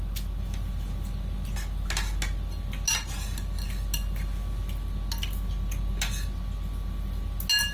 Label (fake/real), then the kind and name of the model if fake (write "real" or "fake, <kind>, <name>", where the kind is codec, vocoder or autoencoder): real